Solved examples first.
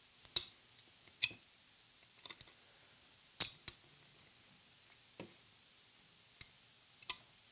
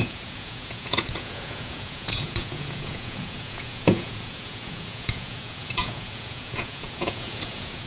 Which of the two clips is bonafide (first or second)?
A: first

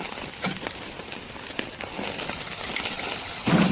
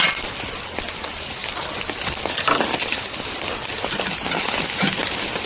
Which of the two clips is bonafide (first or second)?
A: second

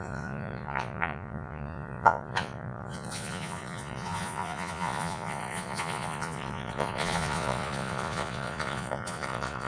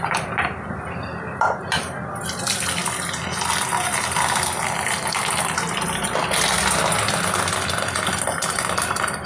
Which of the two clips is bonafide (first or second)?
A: second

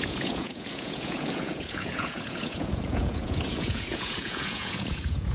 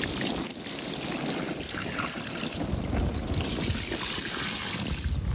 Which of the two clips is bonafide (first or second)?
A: second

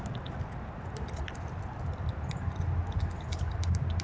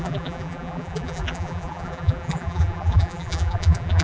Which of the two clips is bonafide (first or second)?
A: first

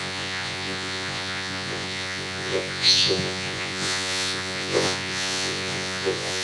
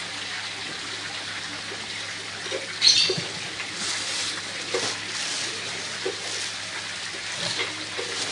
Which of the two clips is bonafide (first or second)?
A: second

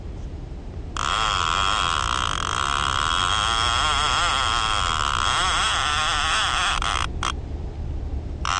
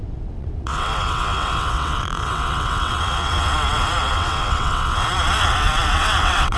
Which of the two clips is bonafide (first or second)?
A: first